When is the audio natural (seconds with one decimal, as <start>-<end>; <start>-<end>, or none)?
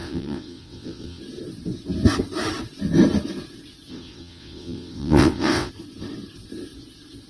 1.2-3.9; 5.7-7.3